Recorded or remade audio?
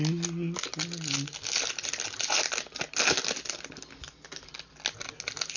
recorded